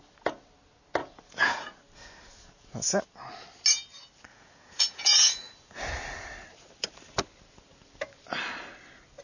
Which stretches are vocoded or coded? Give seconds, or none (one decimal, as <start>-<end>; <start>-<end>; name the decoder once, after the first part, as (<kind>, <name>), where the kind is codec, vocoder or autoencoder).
1.0-1.8 (vocoder, Vocos); 2.3-3.0; 4.3-5.7